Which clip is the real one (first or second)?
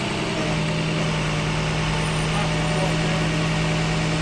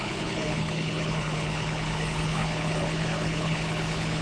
first